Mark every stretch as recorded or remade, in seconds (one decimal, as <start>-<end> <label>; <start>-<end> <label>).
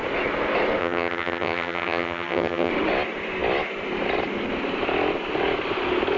0.0-0.8 recorded; 0.8-2.7 remade; 2.7-6.2 recorded